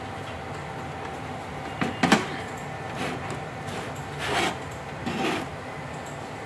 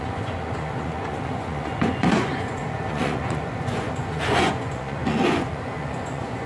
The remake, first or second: second